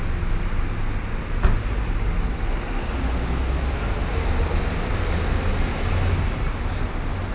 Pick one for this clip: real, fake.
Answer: real